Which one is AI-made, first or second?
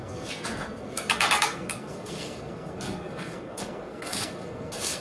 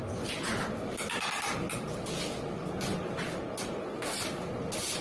first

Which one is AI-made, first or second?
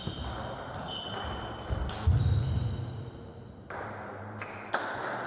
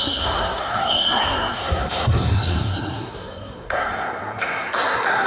second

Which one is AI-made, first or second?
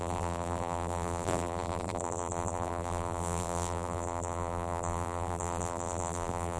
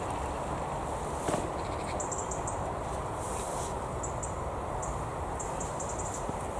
first